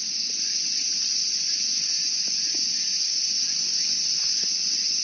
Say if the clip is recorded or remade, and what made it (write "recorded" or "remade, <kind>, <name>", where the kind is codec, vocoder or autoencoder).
recorded